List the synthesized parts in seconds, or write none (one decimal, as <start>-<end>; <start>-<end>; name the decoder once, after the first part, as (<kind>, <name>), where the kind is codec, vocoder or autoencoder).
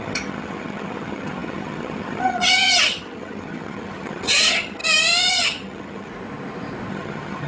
0.0-4.8 (vocoder, HiFi-GAN); 5.3-6.1; 6.9-7.5